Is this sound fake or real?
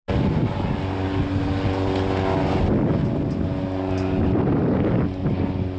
real